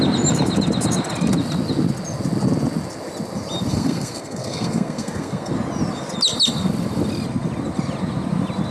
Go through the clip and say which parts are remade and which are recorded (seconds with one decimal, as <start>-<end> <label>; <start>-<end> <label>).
0.0-3.7 recorded; 3.7-5.5 remade; 5.5-8.7 recorded